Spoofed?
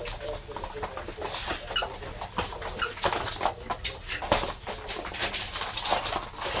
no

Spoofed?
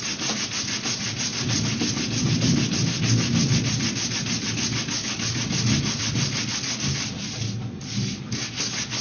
no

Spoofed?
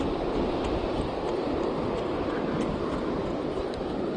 no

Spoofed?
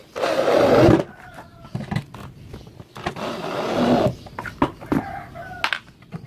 no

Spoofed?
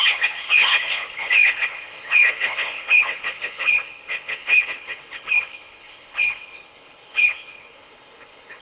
yes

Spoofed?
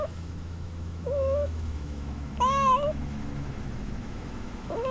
yes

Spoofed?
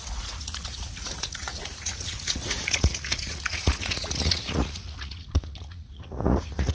yes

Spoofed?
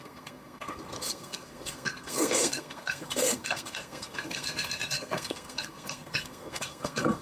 yes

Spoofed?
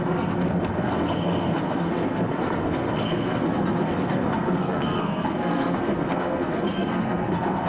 yes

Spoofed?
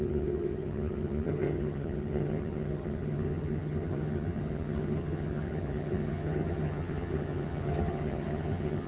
yes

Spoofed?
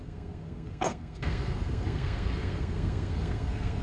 yes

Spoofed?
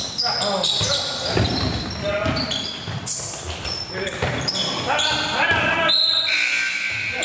no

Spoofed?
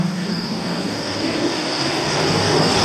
yes